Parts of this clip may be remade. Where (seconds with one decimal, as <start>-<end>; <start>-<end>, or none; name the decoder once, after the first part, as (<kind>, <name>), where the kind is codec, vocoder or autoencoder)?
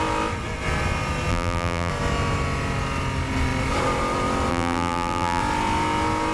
1.3-1.9 (vocoder, BigVGAN v2); 4.5-5.4